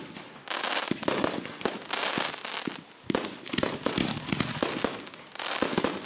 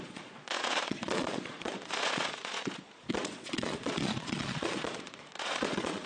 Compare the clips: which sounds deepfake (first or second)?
second